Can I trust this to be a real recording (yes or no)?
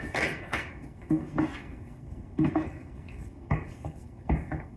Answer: no